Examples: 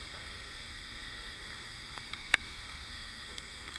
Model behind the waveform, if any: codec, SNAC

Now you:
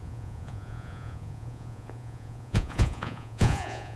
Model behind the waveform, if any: vocoder, Vocos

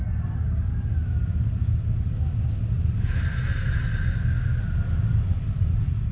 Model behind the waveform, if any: none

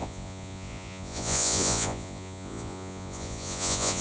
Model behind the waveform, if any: vocoder, Vocos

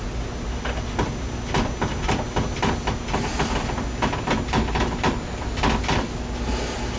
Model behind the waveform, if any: none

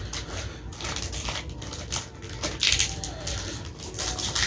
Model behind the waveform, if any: none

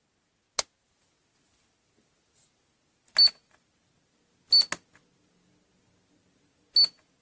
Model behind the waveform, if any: none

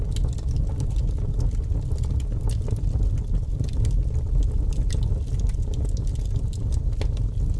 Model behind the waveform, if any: none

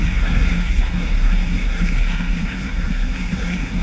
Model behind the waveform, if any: codec, SNAC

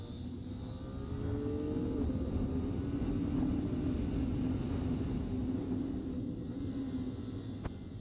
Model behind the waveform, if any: none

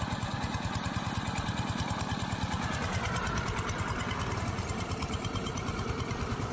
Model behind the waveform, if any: none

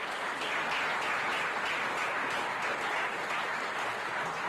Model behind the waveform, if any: none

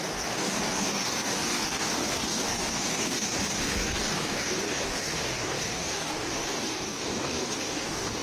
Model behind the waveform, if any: codec, DAC